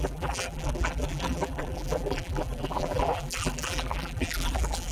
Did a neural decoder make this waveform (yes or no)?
yes